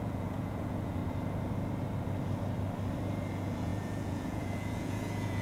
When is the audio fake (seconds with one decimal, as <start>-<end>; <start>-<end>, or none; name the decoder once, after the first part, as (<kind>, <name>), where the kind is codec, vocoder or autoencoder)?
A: 0.0-1.0 (vocoder, Vocos); 3.3-5.4